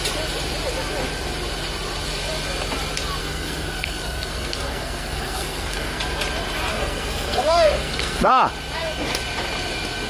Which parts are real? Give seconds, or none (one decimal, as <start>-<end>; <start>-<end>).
0.0-3.2; 6.0-6.7; 8.3-10.1